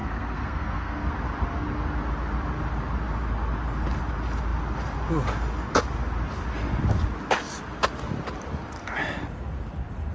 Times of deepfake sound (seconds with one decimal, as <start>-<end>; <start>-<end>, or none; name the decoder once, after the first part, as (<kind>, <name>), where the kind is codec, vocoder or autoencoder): 0.0-1.1 (codec, SNAC)